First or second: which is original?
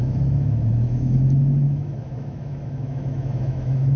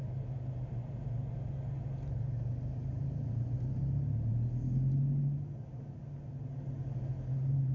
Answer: second